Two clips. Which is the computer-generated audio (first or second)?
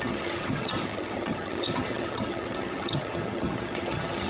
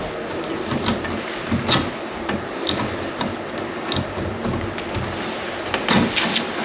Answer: first